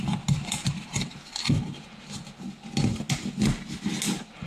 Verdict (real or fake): real